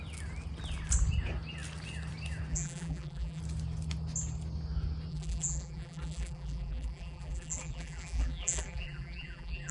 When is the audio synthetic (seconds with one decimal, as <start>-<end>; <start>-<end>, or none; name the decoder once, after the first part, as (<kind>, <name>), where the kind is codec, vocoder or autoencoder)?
2.5-3.4 (vocoder, BigVGAN v2); 5.1-9.7